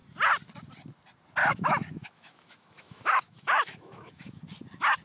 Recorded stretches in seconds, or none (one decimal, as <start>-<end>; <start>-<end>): 0.0-1.4; 4.4-5.0